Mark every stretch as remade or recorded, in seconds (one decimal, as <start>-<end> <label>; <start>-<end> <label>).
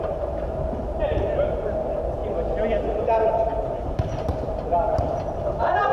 0.0-2.2 remade; 2.2-3.0 recorded; 3.0-5.9 remade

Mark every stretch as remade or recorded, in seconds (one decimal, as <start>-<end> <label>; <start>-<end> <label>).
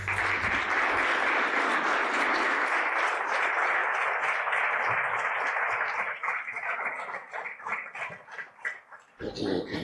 0.0-3.8 recorded; 3.8-5.4 remade; 5.4-9.8 recorded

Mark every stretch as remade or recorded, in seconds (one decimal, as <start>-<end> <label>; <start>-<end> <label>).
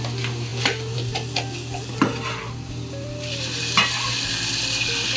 0.0-5.2 recorded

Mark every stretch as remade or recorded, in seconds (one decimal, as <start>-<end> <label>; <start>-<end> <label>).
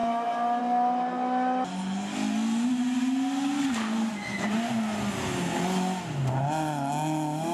0.0-7.5 recorded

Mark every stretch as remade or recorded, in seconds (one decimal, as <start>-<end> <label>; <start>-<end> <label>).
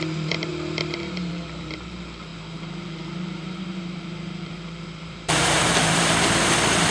0.0-0.5 remade; 0.5-1.3 recorded; 1.3-6.9 remade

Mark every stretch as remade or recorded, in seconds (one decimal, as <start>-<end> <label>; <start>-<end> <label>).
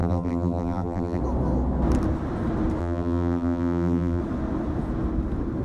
0.0-1.2 remade; 1.2-2.8 recorded; 2.8-4.2 remade; 4.2-5.6 recorded